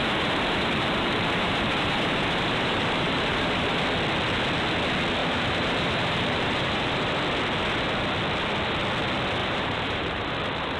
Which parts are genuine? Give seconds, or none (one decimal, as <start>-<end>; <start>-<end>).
3.8-5.2; 7.0-9.4; 10.3-10.8